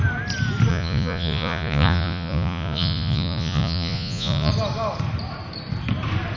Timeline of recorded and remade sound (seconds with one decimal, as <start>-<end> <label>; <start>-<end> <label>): 0.0-0.7 recorded; 0.7-4.5 remade; 4.5-6.4 recorded